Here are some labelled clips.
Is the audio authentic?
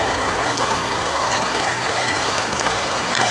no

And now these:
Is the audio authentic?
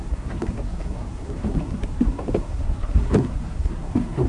no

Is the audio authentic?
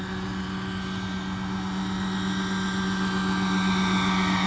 yes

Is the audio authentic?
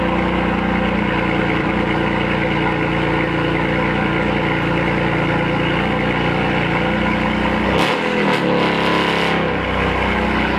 yes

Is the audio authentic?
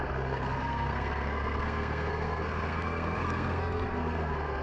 no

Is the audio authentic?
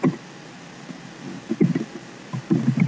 yes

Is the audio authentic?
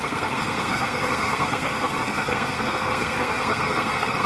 no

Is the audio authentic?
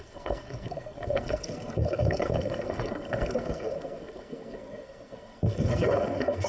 no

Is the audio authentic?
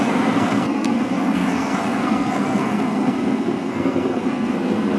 no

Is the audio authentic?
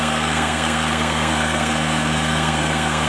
no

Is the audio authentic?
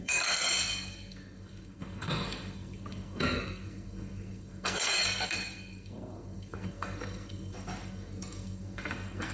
no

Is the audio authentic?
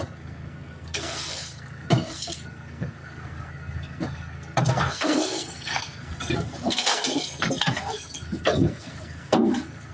no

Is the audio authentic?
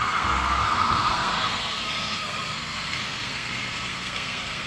no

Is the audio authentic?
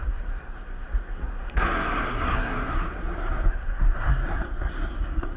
no